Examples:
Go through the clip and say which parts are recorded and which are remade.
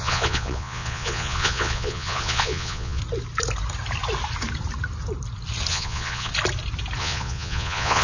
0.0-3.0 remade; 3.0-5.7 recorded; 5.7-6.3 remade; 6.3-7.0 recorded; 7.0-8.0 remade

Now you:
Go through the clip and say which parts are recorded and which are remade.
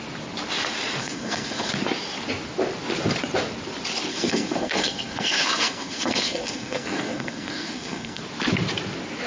0.0-1.0 recorded; 1.0-1.7 remade; 1.7-4.1 recorded; 4.1-8.2 remade; 8.2-9.3 recorded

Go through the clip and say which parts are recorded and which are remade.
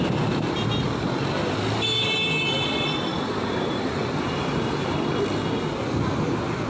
0.0-3.1 recorded; 3.1-4.2 remade; 4.2-6.7 recorded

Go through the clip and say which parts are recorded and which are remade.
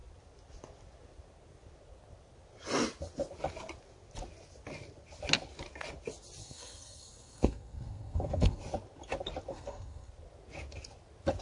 0.0-6.4 recorded; 6.4-8.6 remade; 8.6-9.5 recorded; 9.5-10.1 remade; 10.1-11.4 recorded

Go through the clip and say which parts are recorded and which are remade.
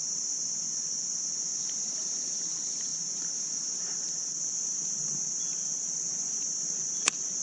0.0-1.5 recorded; 1.5-2.4 remade; 2.4-2.9 recorded; 2.9-7.4 remade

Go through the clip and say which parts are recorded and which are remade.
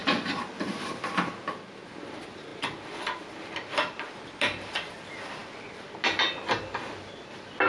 0.0-7.7 recorded